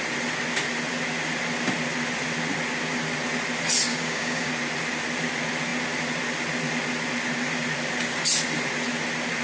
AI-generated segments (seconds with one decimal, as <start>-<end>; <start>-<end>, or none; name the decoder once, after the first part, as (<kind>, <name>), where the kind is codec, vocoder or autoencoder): 3.9-4.5 (codec, DAC)